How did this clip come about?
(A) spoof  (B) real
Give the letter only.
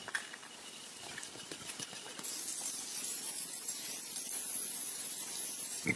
B